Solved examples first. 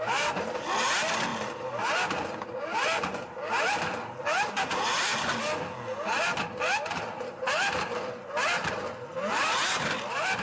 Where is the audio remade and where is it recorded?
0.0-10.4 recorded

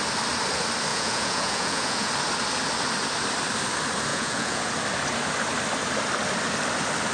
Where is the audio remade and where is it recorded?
0.0-0.9 recorded; 0.9-2.1 remade; 2.1-4.1 recorded; 4.1-4.7 remade; 4.7-7.1 recorded